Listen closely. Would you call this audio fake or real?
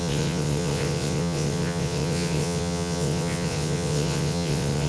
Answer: fake